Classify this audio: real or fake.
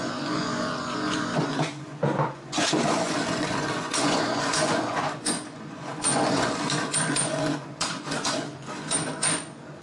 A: fake